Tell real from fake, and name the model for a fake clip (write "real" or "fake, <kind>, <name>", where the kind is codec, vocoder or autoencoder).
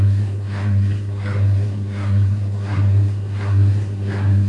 fake, codec, SNAC